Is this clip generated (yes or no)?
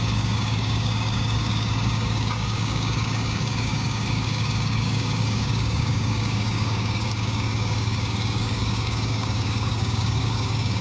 yes